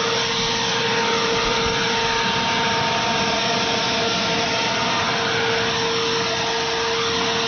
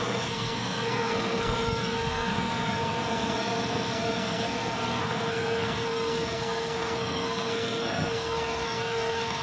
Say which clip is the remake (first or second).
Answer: second